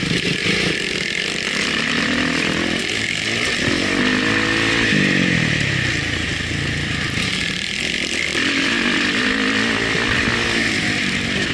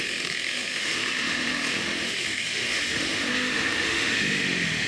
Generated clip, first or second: second